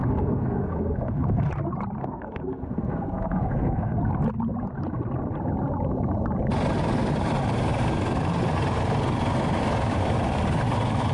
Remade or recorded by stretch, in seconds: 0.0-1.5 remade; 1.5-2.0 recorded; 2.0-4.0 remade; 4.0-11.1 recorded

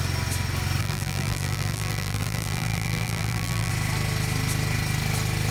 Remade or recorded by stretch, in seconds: 0.0-0.8 recorded; 0.8-3.7 remade; 3.7-5.5 recorded